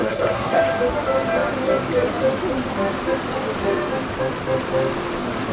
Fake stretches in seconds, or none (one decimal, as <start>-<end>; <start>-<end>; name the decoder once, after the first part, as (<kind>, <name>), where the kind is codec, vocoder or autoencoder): 0.0-0.6 (codec, SNAC)